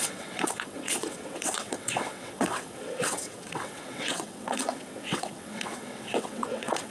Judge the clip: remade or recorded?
remade